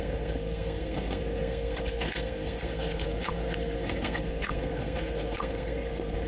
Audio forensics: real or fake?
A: fake